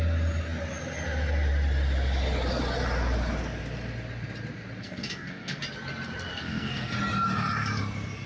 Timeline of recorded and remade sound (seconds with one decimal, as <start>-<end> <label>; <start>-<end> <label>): 0.0-4.8 recorded; 4.8-5.6 remade; 5.6-6.3 recorded; 6.3-6.9 remade; 6.9-8.3 recorded